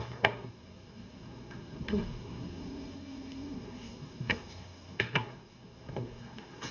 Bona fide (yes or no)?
no